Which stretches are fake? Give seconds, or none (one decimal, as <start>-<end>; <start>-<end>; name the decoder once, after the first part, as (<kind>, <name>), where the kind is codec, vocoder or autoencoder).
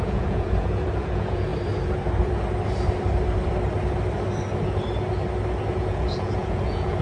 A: 0.0-1.5 (vocoder, Vocos); 5.7-7.0